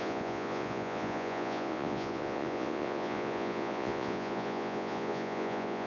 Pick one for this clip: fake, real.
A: fake